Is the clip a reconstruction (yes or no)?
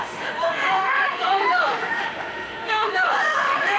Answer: yes